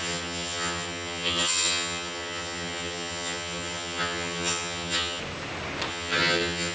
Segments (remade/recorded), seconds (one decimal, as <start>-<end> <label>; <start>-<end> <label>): 0.0-5.2 remade; 5.2-5.9 recorded; 5.9-6.7 remade